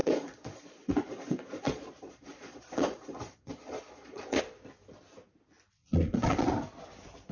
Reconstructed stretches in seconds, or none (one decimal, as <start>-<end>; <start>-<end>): 0.0-4.4; 5.8-6.5